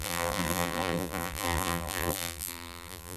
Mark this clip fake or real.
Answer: fake